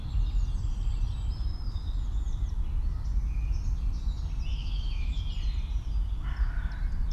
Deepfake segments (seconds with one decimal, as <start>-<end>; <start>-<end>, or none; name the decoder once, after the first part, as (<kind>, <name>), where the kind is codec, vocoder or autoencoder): 4.5-5.2 (autoencoder, DAC-VAE)